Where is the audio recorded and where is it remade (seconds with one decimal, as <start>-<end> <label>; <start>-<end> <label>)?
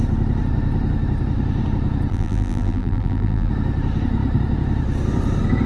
0.0-2.1 recorded; 2.1-3.5 remade; 3.5-5.7 recorded